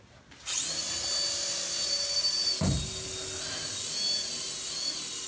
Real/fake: real